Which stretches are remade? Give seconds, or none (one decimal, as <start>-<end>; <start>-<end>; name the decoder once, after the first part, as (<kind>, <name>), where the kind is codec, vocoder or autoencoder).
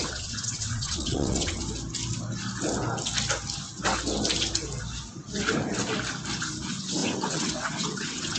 0.0-1.6 (vocoder, WaveNeXt); 6.6-8.4